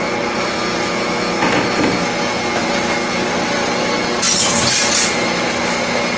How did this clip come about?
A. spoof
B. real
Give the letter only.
B